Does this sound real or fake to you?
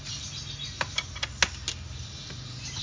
real